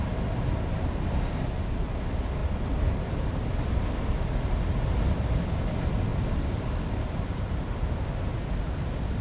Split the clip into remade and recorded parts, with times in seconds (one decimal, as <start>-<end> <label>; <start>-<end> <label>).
0.0-9.2 recorded